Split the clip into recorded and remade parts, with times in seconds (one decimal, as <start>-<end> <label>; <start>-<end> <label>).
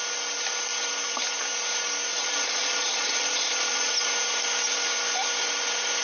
0.0-2.1 recorded; 2.1-3.9 remade; 3.9-6.0 recorded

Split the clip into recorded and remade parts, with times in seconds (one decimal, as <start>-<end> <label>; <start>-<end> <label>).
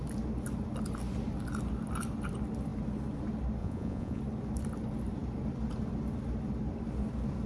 0.0-3.6 recorded; 3.6-4.2 remade; 4.2-7.5 recorded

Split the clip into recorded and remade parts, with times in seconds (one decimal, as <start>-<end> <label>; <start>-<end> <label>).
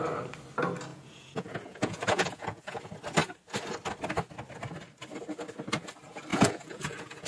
0.0-0.9 recorded; 0.9-2.8 remade; 2.8-6.3 recorded; 6.3-7.3 remade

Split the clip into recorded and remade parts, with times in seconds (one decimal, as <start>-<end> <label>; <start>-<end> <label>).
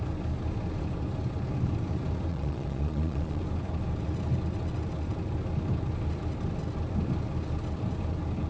0.0-2.3 recorded; 2.3-3.4 remade; 3.4-8.5 recorded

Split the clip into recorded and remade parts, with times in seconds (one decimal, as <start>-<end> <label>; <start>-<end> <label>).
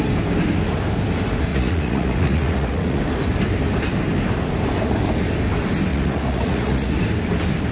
0.0-1.5 recorded; 1.5-3.0 remade; 3.0-5.9 recorded; 5.9-6.9 remade; 6.9-7.7 recorded